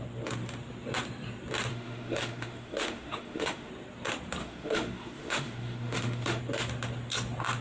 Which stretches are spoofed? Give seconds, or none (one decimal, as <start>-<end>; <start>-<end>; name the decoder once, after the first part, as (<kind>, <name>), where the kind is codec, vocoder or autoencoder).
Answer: 1.7-3.7 (autoencoder, DAC-VAE); 4.4-6.4